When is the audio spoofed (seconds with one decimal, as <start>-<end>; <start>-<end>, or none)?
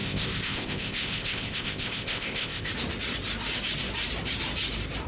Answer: 0.0-2.7